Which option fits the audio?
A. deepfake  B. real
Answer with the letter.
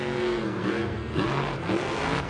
A